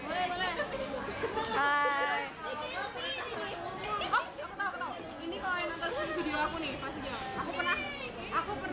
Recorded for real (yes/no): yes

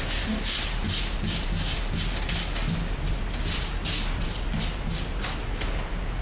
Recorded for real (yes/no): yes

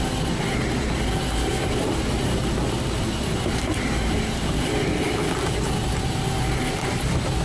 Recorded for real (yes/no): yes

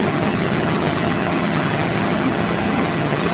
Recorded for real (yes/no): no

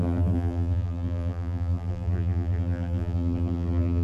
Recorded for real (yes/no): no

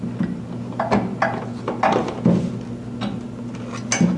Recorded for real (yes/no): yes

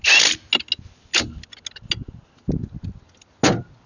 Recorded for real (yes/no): yes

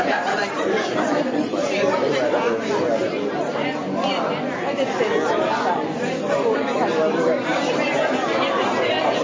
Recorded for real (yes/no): yes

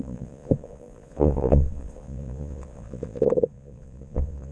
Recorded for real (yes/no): no